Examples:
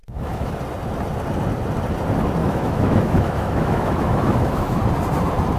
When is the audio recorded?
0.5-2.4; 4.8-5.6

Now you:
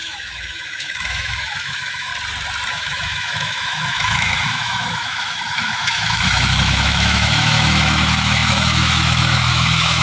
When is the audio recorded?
2.1-2.7

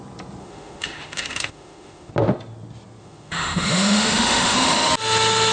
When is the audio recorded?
0.0-0.4; 2.1-3.0; 4.9-5.5

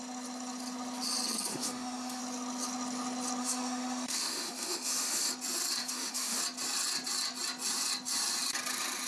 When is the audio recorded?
0.0-1.5; 2.2-3.4; 5.3-5.8; 6.4-9.1

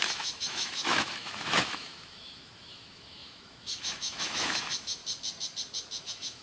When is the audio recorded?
5.0-6.0

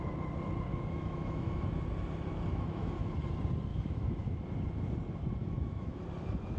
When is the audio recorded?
0.0-0.7; 1.6-2.5; 3.1-3.7; 4.4-5.4; 6.0-6.6

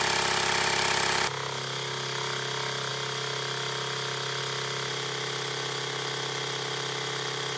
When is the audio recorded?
0.0-7.6

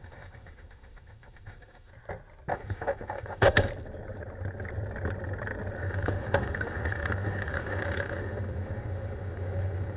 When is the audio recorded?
1.9-2.5; 3.7-5.8